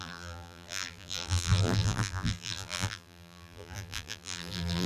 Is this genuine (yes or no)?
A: no